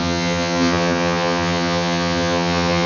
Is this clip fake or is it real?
fake